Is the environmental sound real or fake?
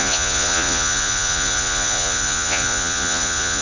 fake